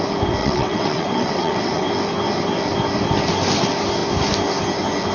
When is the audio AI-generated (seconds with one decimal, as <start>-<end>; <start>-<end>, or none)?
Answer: 0.4-1.9